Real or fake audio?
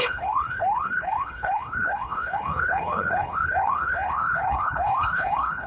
fake